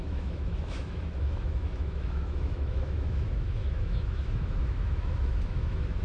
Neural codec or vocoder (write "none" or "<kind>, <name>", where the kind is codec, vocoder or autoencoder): autoencoder, DAC-VAE